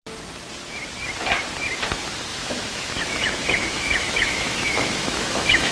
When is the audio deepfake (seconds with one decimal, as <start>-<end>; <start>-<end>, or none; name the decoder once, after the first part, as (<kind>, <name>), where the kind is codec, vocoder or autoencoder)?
2.3-5.7 (autoencoder, DAC-VAE)

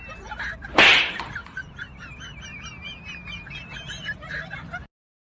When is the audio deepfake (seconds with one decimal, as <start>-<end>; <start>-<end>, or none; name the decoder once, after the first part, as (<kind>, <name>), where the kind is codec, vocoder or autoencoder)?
0.9-2.7 (vocoder, BigVGAN v2)

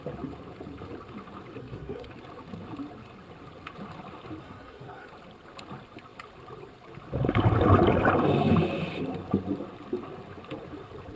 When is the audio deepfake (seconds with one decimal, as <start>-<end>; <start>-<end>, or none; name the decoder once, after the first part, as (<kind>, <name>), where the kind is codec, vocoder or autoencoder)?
1.6-2.1 (codec, SNAC); 4.4-5.1

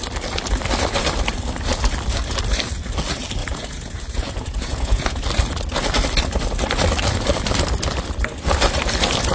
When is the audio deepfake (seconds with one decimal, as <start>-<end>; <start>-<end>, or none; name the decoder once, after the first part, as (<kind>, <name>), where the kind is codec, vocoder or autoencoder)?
3.4-5.2 (vocoder, Vocos)

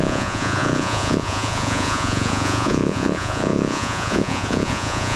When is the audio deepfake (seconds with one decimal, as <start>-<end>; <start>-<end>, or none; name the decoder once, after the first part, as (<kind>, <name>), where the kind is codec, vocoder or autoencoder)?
0.0-5.2 (vocoder, Vocos)

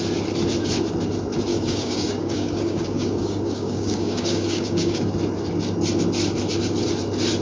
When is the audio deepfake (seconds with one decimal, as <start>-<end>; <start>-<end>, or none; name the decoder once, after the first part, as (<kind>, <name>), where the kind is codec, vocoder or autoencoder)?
1.5-5.1 (codec, DAC)